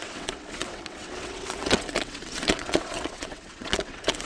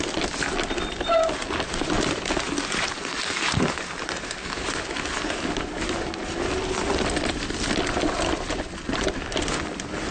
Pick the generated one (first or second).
first